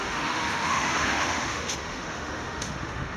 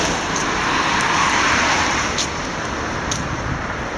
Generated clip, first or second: first